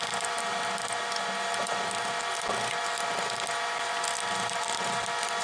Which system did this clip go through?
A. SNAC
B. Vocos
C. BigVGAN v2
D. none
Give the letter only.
D